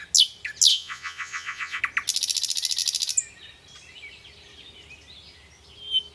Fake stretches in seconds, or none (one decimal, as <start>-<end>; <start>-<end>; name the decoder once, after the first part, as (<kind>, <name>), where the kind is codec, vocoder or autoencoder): 0.7-1.8 (vocoder, Vocos)